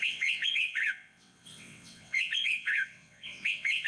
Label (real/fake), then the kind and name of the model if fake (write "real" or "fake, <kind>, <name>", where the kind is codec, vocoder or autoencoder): fake, vocoder, WaveNeXt